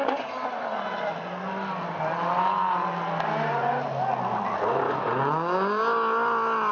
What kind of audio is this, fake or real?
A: real